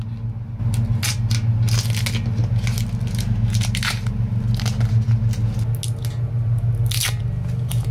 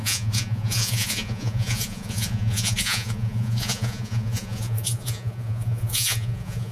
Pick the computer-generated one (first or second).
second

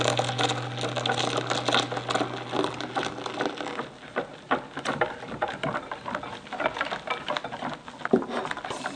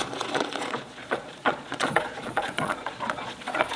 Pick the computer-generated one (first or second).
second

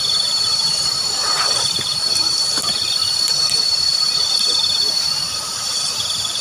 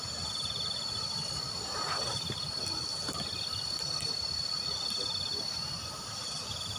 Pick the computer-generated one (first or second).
first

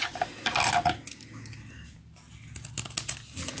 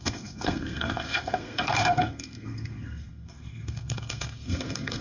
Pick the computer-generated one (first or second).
second